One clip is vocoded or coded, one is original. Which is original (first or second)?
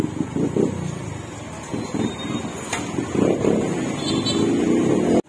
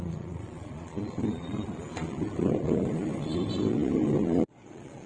first